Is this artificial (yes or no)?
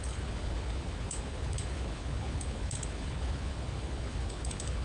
yes